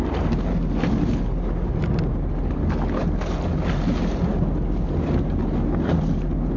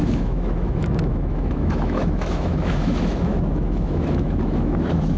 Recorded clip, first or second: first